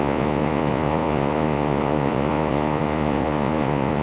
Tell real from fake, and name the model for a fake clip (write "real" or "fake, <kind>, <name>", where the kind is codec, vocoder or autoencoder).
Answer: fake, vocoder, Vocos